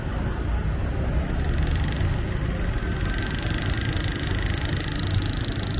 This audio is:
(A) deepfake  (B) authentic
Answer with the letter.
B